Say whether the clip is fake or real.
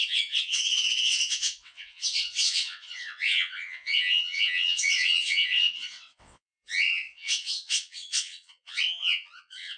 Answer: fake